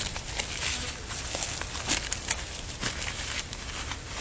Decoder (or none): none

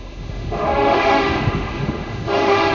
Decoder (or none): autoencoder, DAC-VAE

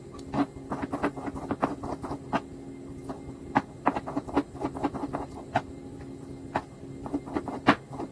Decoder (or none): none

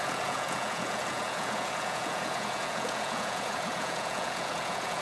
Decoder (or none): vocoder, Vocos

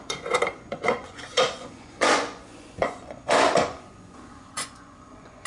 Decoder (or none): vocoder, Vocos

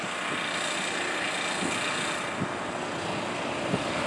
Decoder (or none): none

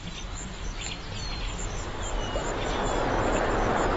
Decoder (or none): vocoder, BigVGAN v2